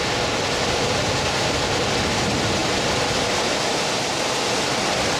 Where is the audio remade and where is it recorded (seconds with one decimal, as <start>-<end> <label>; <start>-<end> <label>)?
0.0-5.2 recorded

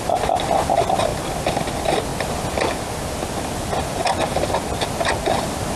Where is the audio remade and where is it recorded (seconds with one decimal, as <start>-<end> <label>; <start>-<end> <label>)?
0.0-5.8 recorded

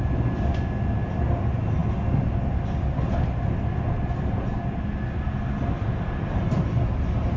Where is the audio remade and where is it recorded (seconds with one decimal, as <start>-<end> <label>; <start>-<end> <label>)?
0.0-7.4 recorded

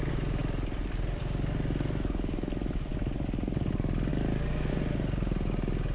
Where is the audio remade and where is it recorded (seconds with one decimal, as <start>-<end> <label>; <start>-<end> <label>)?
0.0-0.4 recorded; 0.4-1.2 remade; 1.2-4.1 recorded; 4.1-4.7 remade; 4.7-5.9 recorded

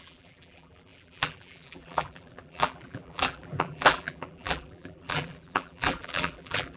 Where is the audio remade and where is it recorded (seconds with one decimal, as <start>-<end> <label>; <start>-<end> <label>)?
0.0-6.8 remade

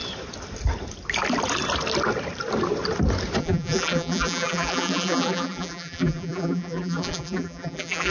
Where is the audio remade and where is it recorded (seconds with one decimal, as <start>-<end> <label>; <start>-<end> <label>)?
0.0-3.4 recorded; 3.4-8.1 remade

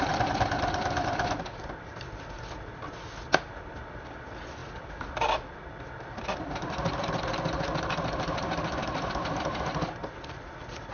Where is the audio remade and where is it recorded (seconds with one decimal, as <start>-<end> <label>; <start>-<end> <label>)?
0.0-10.9 remade

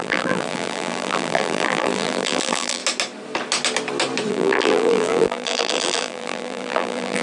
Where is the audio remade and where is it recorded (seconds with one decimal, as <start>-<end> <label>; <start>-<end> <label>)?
0.0-2.8 remade; 2.8-4.3 recorded; 4.3-7.2 remade